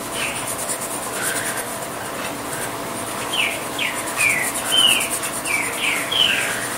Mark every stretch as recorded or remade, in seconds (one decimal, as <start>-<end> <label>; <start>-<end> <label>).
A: 0.0-1.7 remade; 1.7-2.5 recorded; 2.5-4.4 remade; 4.4-5.5 recorded; 5.5-6.8 remade